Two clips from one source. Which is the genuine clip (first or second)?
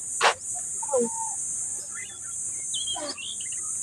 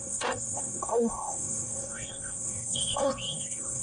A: first